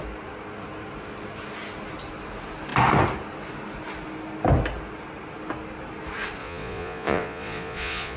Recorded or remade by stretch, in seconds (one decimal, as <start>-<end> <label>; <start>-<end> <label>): 0.0-6.4 recorded; 6.4-8.2 remade